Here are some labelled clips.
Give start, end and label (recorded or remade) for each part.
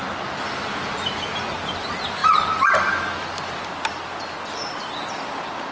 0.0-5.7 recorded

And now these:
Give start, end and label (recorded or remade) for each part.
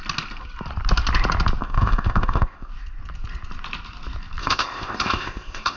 0.0-1.6 recorded; 1.6-2.7 remade; 2.7-4.4 recorded; 4.4-5.8 remade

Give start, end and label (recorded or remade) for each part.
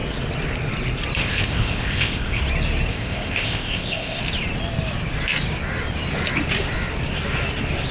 0.0-1.2 recorded; 1.2-2.4 remade; 2.4-2.9 recorded; 2.9-4.2 remade; 4.2-7.9 recorded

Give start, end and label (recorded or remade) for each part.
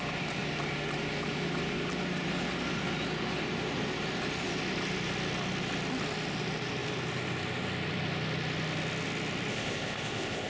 0.0-9.5 recorded; 9.5-10.5 remade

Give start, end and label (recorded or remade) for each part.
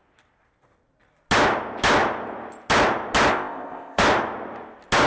0.0-3.3 recorded; 3.3-4.0 remade; 4.0-5.1 recorded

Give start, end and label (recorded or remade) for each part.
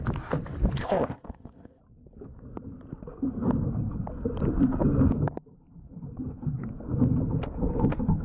0.0-0.8 recorded; 0.8-1.8 remade; 1.8-8.2 recorded